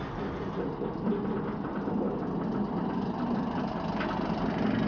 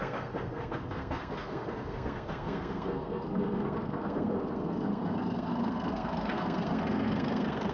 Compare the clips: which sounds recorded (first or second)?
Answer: first